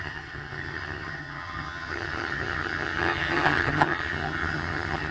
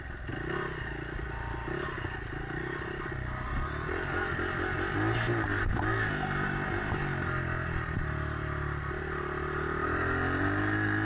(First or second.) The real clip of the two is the second